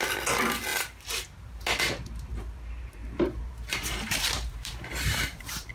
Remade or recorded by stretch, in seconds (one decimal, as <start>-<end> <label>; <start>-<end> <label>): 0.0-3.0 recorded; 3.0-5.7 remade